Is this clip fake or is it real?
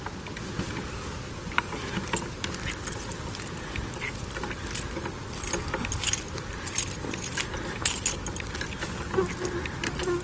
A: real